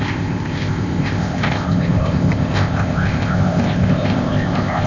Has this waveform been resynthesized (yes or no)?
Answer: yes